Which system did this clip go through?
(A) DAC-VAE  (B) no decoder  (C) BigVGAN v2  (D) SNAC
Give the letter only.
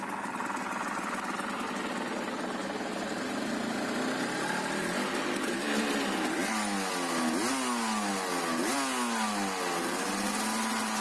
B